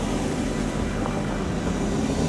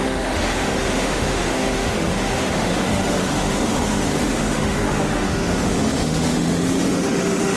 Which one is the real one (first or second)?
first